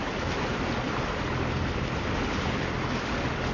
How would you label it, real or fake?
real